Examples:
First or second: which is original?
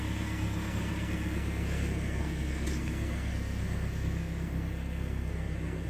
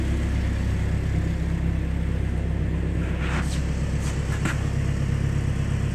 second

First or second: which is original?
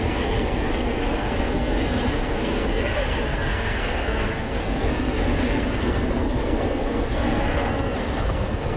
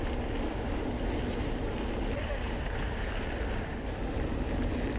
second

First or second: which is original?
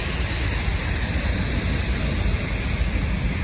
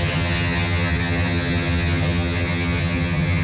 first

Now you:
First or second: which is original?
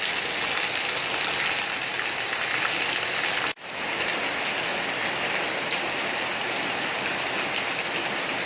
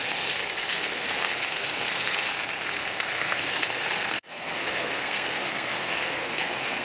first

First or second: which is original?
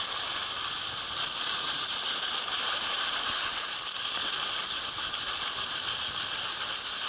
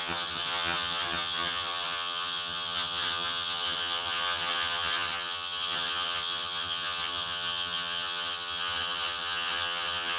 first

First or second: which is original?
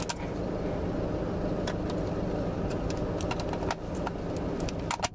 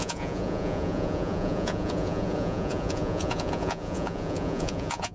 first